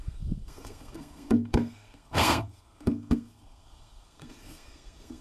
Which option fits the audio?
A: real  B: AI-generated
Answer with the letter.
B